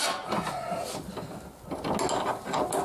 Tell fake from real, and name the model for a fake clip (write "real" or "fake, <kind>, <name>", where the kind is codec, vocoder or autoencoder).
real